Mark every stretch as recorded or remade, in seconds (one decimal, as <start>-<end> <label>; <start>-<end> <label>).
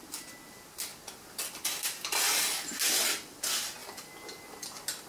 0.0-5.1 recorded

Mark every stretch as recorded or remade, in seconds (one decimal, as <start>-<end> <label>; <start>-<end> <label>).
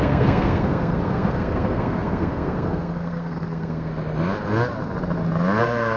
0.0-3.9 remade; 3.9-5.6 recorded; 5.6-6.0 remade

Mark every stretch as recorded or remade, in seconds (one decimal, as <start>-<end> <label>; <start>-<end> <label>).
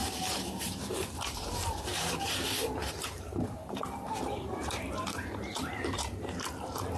0.0-7.0 remade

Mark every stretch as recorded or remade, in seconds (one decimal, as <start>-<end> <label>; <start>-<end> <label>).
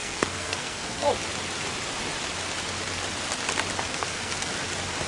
0.0-1.1 remade; 1.1-3.9 recorded; 3.9-4.5 remade; 4.5-5.1 recorded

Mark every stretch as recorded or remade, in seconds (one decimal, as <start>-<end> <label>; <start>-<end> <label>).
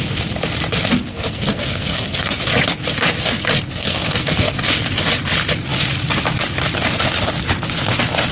0.0-1.1 recorded; 1.1-2.4 remade; 2.4-3.7 recorded; 3.7-4.5 remade; 4.5-8.3 recorded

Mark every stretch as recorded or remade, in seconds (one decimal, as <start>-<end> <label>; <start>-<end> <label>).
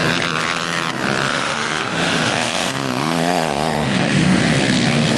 0.0-1.3 recorded; 1.3-4.4 remade; 4.4-5.2 recorded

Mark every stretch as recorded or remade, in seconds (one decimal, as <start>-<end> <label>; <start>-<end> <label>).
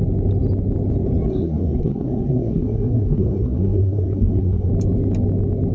0.0-1.3 recorded; 1.3-4.7 remade; 4.7-5.7 recorded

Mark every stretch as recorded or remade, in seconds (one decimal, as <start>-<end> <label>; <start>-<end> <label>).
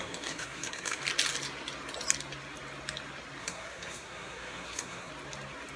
0.0-1.0 remade; 1.0-3.4 recorded; 3.4-5.1 remade; 5.1-5.8 recorded